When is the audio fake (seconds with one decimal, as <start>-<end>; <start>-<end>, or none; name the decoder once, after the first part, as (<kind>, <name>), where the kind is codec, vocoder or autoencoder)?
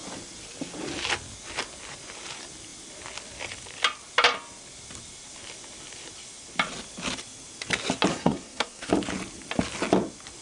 8.1-8.9 (codec, SNAC)